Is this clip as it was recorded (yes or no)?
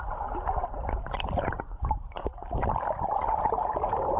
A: yes